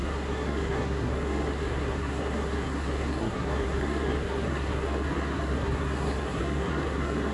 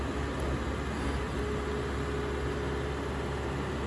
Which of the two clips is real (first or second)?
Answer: second